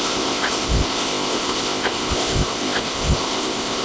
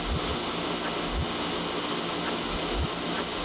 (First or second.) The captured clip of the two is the second